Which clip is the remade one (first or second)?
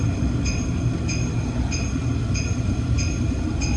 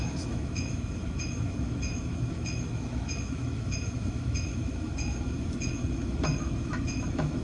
second